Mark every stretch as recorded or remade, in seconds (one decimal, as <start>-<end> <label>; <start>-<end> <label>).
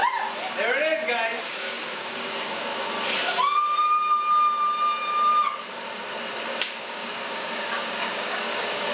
0.0-1.4 recorded; 1.4-2.7 remade; 2.7-6.4 recorded; 6.4-8.9 remade